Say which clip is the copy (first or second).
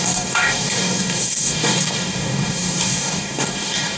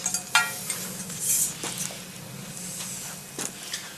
first